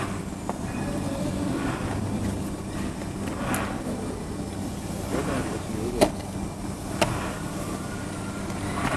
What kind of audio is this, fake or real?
real